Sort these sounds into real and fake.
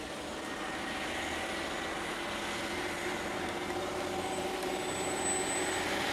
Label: real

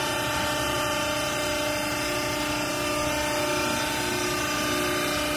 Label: real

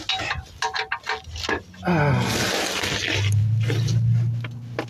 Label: real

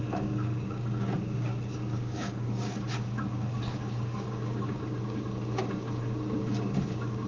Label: fake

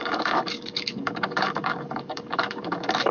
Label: fake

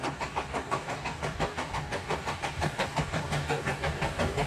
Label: fake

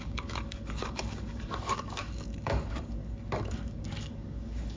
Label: fake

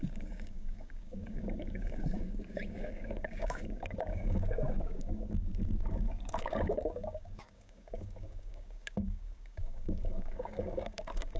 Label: fake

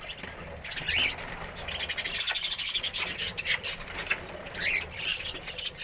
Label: real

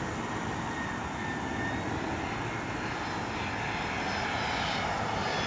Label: real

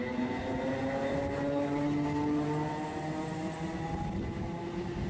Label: real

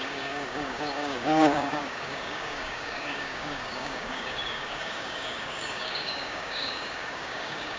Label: fake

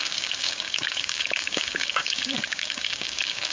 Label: fake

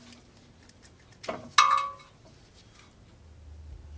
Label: real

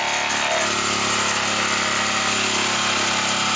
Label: real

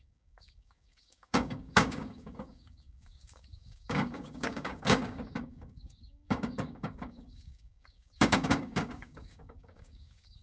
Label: fake